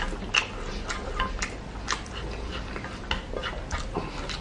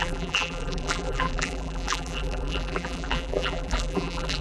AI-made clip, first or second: second